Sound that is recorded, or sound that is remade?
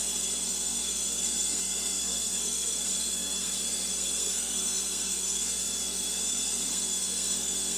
remade